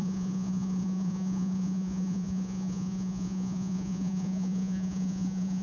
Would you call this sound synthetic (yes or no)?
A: yes